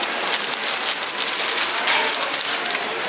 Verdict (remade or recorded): recorded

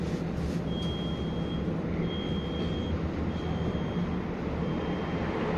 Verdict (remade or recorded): recorded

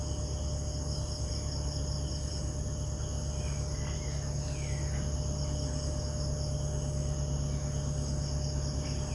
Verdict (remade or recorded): recorded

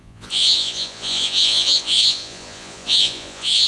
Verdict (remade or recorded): remade